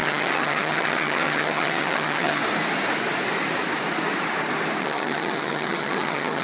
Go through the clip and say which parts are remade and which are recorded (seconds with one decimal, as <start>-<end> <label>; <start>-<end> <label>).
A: 0.0-2.4 remade; 2.4-4.8 recorded; 4.8-6.4 remade